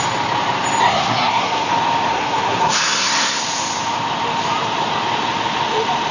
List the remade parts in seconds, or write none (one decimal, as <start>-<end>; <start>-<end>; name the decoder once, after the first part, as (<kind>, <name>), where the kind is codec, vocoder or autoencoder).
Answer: 0.8-1.7 (codec, SNAC); 2.1-3.4